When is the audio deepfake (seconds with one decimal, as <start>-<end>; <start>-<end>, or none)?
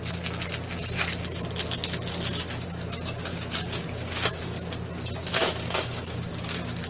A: 3.3-4.4; 5.3-6.3